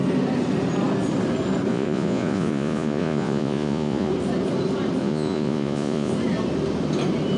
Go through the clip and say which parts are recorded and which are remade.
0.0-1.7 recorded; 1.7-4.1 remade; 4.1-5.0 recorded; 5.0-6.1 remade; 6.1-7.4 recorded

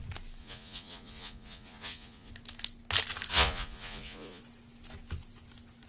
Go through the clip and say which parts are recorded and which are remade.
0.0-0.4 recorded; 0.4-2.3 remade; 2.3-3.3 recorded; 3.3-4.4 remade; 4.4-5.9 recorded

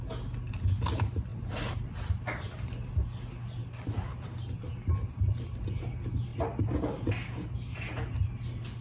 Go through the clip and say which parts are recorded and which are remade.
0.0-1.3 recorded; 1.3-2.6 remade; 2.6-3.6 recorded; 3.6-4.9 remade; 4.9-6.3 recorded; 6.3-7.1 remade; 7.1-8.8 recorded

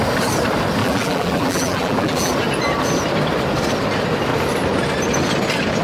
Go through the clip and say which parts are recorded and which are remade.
0.0-0.8 recorded; 0.8-2.3 remade; 2.3-5.8 recorded

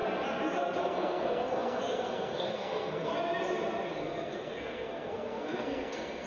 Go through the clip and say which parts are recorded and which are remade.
0.0-0.8 recorded; 0.8-3.1 remade; 3.1-4.0 recorded; 4.0-6.3 remade